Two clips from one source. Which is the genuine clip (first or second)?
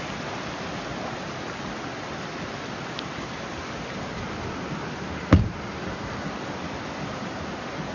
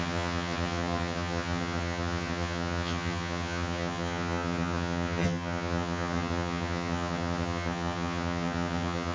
first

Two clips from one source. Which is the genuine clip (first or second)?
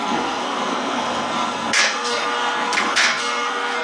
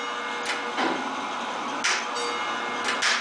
second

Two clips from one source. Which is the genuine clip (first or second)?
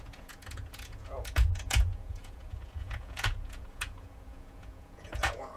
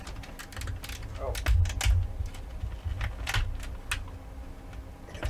second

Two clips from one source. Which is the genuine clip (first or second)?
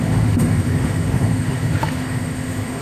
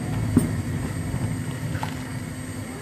second